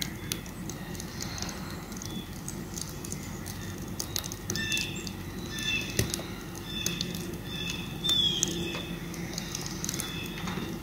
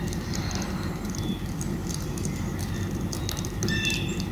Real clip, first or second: first